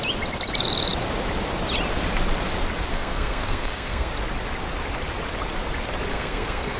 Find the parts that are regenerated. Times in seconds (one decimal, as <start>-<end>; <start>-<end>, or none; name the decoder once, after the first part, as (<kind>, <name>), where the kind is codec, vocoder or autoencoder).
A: 2.9-4.1 (codec, SNAC); 6.1-6.8